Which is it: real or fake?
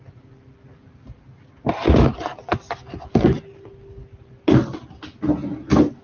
real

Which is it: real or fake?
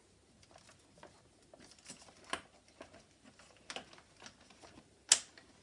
real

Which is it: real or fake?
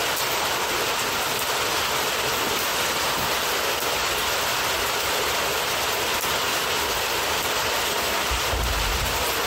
real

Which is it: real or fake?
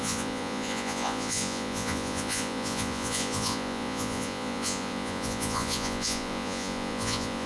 fake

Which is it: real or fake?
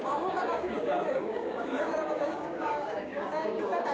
fake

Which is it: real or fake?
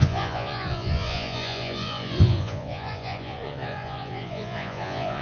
fake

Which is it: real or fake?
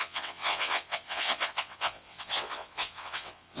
fake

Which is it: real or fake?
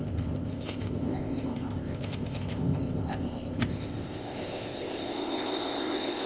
fake